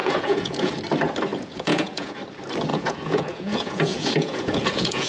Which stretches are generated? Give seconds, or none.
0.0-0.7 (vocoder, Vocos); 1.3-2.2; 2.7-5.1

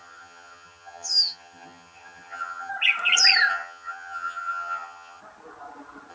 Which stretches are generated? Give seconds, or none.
0.0-2.7 (vocoder, HiFi-GAN); 3.5-5.2

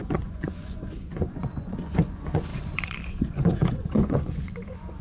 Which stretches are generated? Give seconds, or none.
0.0-5.0 (vocoder, Vocos)